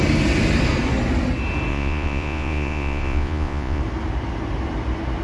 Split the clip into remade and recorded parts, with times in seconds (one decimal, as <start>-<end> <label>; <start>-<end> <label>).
0.0-1.7 recorded; 1.7-3.8 remade; 3.8-5.2 recorded